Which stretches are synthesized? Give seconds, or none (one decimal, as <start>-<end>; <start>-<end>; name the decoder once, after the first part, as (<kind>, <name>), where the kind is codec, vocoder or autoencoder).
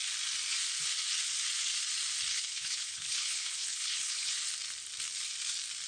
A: 2.3-4.3 (codec, HILCodec)